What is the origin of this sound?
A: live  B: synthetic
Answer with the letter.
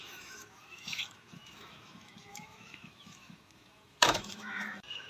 B